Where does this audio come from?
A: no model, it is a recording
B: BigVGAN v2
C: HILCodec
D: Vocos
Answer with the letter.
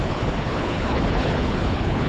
C